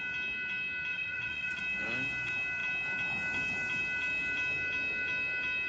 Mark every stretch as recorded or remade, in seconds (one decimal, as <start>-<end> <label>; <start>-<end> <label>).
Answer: 0.0-0.9 recorded; 0.9-1.6 remade; 1.6-5.7 recorded